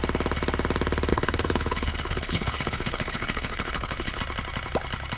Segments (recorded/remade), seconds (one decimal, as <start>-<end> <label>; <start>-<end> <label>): 0.0-1.1 recorded; 1.1-4.2 remade; 4.2-5.2 recorded